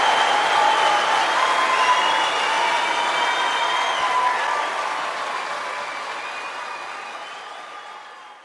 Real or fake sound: real